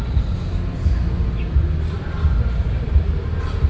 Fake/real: real